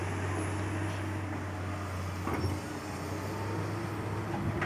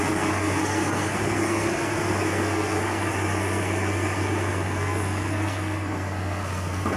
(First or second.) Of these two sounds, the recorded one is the first